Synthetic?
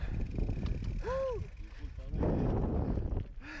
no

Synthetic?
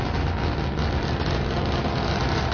no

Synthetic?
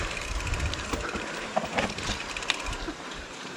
yes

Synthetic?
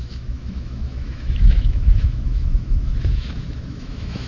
yes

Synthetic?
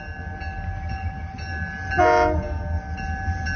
no